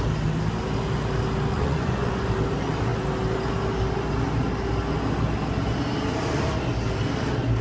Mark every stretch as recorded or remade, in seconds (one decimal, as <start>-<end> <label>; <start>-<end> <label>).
0.0-1.5 recorded; 1.5-2.3 remade; 2.3-7.6 recorded